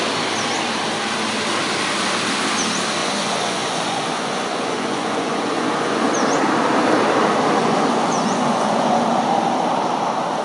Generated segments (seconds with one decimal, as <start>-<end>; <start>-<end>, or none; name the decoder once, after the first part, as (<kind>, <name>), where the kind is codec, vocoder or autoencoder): 3.0-6.1 (vocoder, Vocos); 7.6-9.0